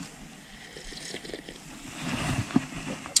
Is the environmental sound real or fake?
real